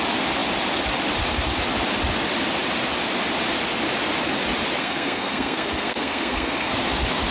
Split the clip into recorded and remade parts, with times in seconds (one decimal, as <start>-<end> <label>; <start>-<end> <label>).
0.0-4.8 recorded; 4.8-6.7 remade; 6.7-7.3 recorded